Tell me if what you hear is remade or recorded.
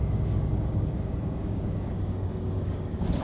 remade